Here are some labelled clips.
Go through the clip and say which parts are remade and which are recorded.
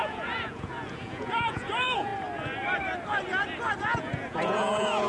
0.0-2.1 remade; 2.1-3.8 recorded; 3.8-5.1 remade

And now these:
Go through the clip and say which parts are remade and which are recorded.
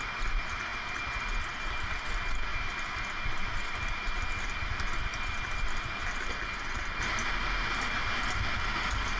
0.0-9.2 recorded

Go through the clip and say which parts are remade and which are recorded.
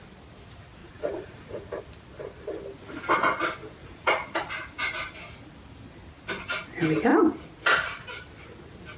0.0-0.8 recorded; 0.8-1.8 remade; 1.8-3.8 recorded; 3.8-4.5 remade; 4.5-9.0 recorded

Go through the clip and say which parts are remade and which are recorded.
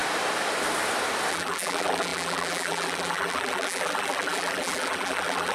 0.0-1.3 recorded; 1.3-5.5 remade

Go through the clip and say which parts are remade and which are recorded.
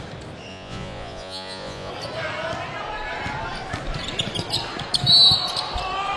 0.0-0.5 recorded; 0.5-1.9 remade; 1.9-6.2 recorded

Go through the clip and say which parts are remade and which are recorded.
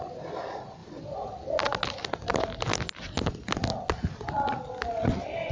0.0-5.5 recorded